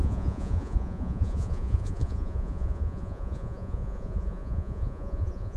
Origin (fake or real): fake